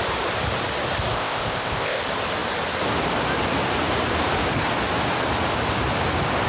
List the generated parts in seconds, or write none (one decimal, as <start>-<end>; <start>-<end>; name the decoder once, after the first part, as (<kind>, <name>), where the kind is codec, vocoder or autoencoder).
1.1-2.0 (codec, ZipCodec)